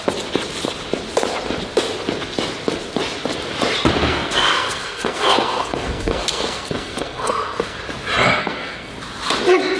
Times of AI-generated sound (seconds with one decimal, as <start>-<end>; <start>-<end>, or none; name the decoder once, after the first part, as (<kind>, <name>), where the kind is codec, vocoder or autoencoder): 4.0-7.8 (codec, SNAC); 8.4-8.9